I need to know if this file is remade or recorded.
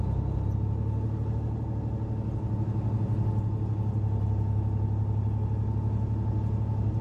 recorded